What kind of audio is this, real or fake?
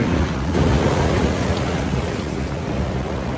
fake